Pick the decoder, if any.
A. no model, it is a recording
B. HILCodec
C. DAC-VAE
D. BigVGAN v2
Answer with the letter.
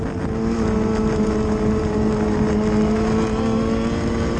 A